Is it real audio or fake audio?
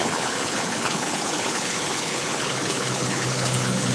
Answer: fake